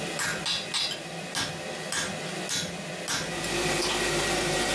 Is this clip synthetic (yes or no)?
no